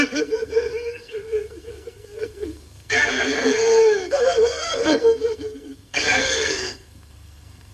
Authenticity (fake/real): fake